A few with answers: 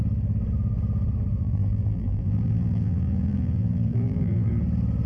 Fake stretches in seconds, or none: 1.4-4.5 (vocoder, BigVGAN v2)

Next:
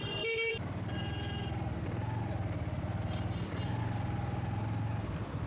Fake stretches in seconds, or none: none

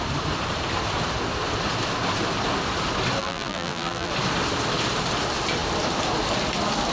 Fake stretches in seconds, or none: 3.2-4.1 (vocoder, BigVGAN v2)

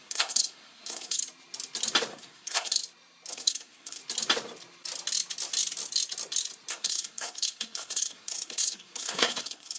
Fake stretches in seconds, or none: 0.0-1.2 (codec, SNAC); 2.1-2.8; 3.3-4.0; 6.7-9.8

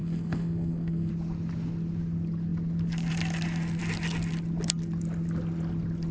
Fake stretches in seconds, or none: 0.0-1.1 (codec, SNAC)

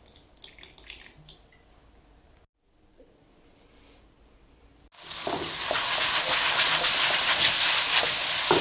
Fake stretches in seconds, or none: none